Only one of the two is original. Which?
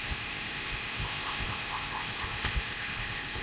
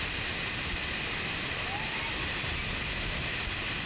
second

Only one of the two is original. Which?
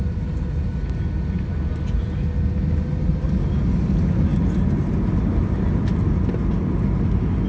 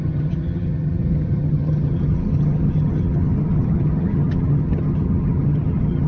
first